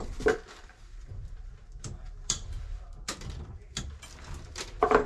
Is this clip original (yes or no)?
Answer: no